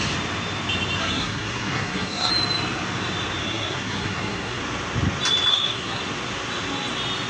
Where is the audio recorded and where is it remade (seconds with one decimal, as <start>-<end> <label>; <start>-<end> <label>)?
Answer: 0.0-1.0 recorded; 1.0-2.3 remade; 2.3-3.4 recorded; 3.4-4.6 remade; 4.6-5.5 recorded; 5.5-6.0 remade; 6.0-7.3 recorded